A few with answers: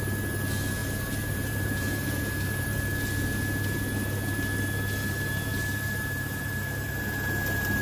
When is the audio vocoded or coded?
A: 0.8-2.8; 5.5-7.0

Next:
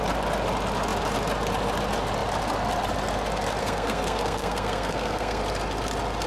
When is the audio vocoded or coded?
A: 3.6-5.4